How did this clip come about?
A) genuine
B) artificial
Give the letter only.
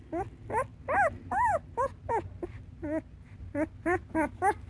A